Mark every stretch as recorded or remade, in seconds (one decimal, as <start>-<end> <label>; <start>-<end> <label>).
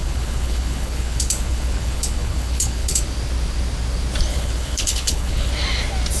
0.0-3.0 remade; 3.0-4.3 recorded; 4.3-5.5 remade; 5.5-6.2 recorded